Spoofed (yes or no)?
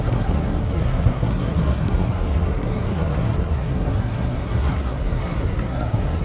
yes